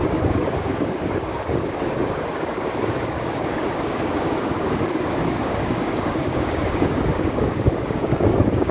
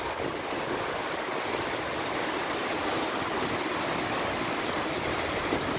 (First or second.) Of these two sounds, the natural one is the second